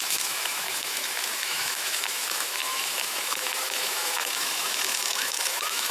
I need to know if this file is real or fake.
fake